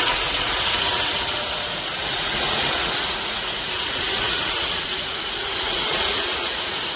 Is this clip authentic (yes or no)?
no